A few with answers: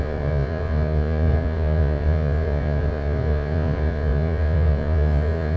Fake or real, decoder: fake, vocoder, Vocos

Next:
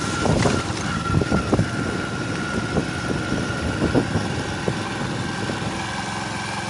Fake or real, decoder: real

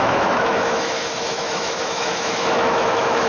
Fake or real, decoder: fake, autoencoder, DAC-VAE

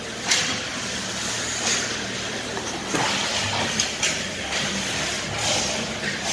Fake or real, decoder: real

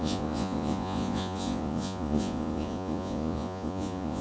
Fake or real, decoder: fake, vocoder, Vocos